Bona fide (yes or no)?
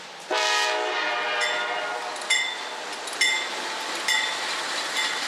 yes